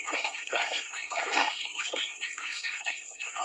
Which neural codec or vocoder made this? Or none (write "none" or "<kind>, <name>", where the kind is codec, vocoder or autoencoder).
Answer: codec, SNAC